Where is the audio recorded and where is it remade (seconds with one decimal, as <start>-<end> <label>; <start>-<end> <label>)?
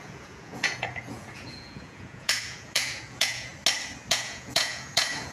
0.0-3.5 remade; 3.5-4.1 recorded; 4.1-5.3 remade